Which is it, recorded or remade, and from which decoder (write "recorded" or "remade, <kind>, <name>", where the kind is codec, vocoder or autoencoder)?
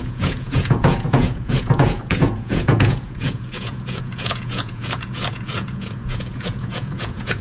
remade, vocoder, Vocos